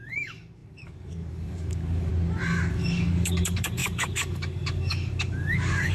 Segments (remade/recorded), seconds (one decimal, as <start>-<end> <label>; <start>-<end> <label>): 0.0-2.1 remade; 2.1-2.7 recorded; 2.7-5.9 remade